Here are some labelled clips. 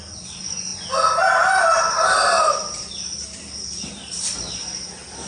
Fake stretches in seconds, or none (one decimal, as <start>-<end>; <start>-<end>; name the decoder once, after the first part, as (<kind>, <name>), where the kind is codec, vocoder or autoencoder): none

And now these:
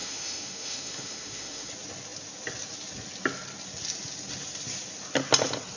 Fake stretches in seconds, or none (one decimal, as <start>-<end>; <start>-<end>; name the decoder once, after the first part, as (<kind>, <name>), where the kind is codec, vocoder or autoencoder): 0.0-1.7 (autoencoder, DAC-VAE)

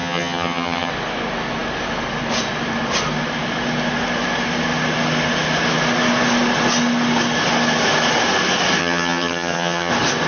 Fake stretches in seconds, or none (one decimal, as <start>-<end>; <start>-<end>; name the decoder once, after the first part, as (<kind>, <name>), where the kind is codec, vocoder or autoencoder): 0.0-0.9 (vocoder, HiFi-GAN); 8.8-9.9

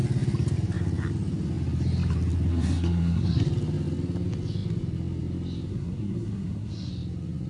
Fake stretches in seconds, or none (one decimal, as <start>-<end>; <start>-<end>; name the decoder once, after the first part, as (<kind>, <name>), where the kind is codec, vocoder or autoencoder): 2.5-3.5 (codec, SNAC); 5.7-6.9

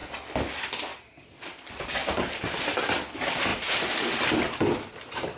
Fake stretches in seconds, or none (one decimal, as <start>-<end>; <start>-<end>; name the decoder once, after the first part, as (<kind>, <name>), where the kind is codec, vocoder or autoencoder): 0.0-1.6 (vocoder, BigVGAN v2)

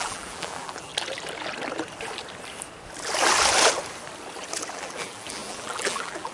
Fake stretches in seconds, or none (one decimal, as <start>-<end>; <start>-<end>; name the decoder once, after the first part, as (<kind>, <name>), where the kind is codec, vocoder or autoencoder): 0.0-0.9 (vocoder, BigVGAN v2); 4.7-6.3

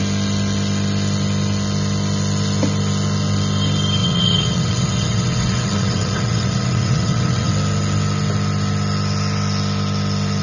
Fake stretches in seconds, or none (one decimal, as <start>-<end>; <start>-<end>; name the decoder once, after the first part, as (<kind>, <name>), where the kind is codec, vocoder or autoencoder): 4.0-7.5 (vocoder, WaveNeXt)